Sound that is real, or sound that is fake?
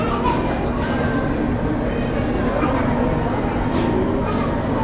real